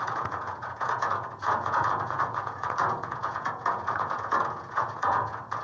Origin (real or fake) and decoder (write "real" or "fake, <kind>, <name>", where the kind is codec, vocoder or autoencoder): fake, vocoder, Vocos